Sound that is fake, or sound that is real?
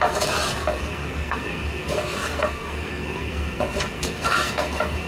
fake